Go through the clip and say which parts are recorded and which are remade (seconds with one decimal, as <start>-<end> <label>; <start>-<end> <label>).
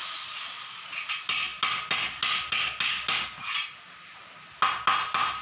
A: 0.0-5.4 recorded